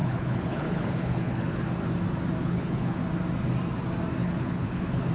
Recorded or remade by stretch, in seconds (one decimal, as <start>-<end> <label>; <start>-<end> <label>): 0.0-1.7 remade; 1.7-2.4 recorded; 2.4-3.0 remade; 3.0-4.2 recorded; 4.2-5.1 remade